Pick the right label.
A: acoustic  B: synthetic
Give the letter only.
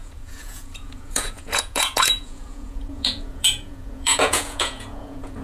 B